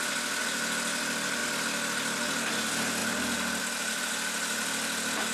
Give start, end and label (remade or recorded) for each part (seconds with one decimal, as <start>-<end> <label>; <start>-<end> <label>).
0.0-5.3 recorded